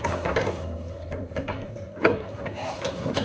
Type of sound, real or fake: fake